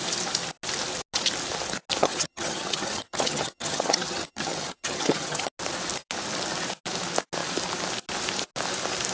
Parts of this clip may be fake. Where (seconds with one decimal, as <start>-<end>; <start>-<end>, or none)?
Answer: 2.0-5.5